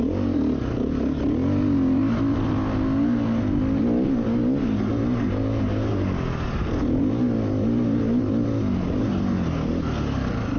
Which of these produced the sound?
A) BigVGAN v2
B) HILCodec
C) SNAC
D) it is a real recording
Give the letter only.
D